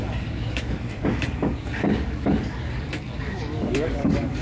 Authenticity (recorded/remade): remade